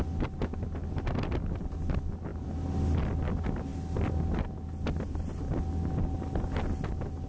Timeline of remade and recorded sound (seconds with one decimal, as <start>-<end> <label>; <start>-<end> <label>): 0.0-7.3 recorded